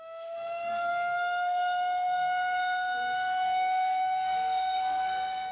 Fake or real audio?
fake